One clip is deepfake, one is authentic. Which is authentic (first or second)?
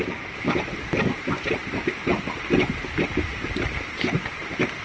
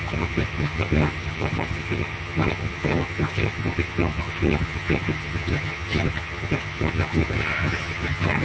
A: first